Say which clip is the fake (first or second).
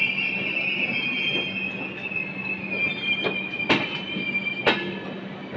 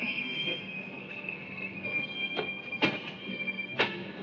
second